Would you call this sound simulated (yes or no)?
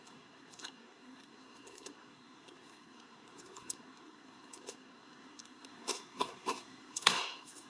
yes